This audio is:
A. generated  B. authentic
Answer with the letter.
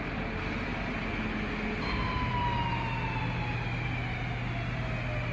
B